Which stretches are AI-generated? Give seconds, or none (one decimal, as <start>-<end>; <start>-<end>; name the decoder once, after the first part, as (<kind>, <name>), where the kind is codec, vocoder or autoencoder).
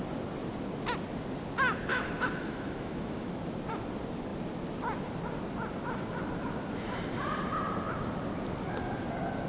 1.9-3.3 (autoencoder, DAC-VAE)